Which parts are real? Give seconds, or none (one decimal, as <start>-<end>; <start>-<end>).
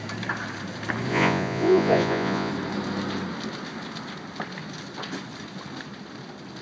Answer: 0.0-1.1; 2.5-6.6